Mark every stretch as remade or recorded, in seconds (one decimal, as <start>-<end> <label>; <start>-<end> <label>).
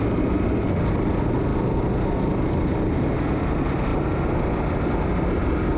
0.0-5.8 recorded